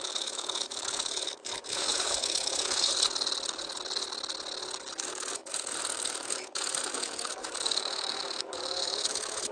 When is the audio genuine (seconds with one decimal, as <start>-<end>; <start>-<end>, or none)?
2.9-5.0